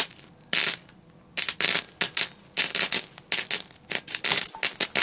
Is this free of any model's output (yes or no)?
yes